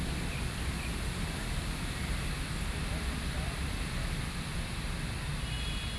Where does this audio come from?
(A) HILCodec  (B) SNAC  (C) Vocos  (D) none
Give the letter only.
D